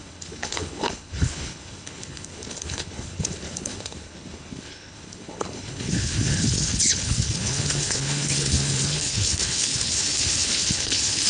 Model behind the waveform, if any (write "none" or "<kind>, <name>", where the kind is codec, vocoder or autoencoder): codec, HILCodec